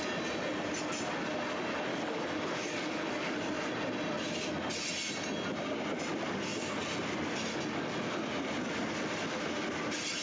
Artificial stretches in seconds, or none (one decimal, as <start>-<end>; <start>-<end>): 1.9-3.4